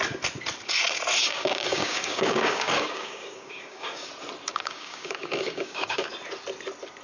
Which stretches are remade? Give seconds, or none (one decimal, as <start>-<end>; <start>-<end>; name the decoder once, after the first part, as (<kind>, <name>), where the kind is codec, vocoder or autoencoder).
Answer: 1.2-4.1 (codec, DAC); 4.5-6.1